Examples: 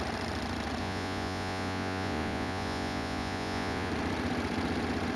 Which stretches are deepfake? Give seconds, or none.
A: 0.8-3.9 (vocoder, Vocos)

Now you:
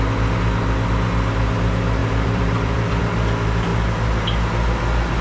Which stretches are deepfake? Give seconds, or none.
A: 2.0-3.0 (vocoder, BigVGAN v2)

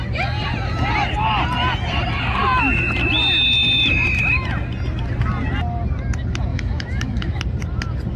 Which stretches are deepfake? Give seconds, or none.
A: 6.5-7.4 (autoencoder, DAC-VAE)